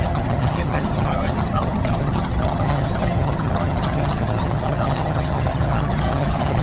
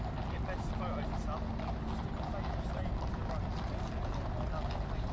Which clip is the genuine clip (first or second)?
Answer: second